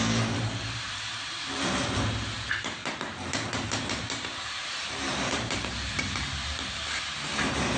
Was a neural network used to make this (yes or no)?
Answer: yes